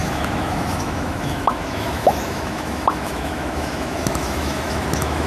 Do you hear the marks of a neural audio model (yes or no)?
yes